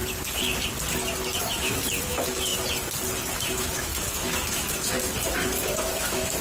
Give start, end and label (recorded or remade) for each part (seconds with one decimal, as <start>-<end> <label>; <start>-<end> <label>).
0.0-1.4 recorded; 1.4-2.5 remade; 2.5-3.3 recorded; 3.3-6.4 remade